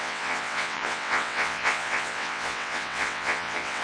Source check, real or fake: fake